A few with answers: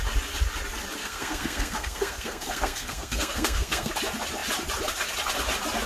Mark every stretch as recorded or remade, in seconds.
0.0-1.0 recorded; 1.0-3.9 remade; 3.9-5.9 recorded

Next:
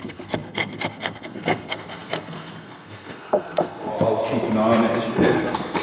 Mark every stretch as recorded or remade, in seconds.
0.0-3.9 remade; 3.9-5.1 recorded; 5.1-5.8 remade

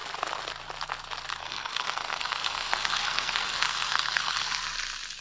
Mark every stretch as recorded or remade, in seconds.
0.0-1.4 recorded; 1.4-4.5 remade; 4.5-5.2 recorded

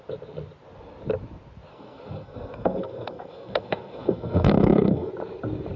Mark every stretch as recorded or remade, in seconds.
0.0-1.7 recorded; 1.7-5.1 remade; 5.1-5.8 recorded

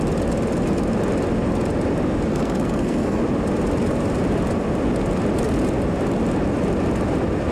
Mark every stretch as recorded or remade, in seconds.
0.0-2.3 recorded; 2.3-3.2 remade; 3.2-7.5 recorded